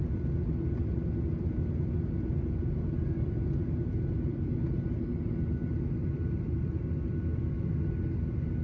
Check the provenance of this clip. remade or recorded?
recorded